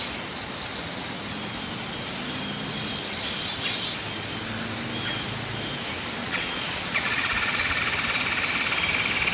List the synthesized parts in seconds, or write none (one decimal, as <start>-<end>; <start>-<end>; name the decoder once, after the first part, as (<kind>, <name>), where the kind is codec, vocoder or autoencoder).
6.2-7.8 (vocoder, Vocos)